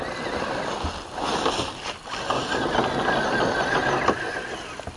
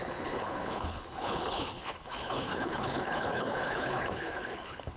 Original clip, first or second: first